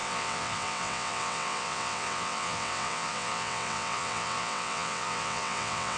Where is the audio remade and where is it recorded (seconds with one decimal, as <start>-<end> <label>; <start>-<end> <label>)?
0.0-6.0 remade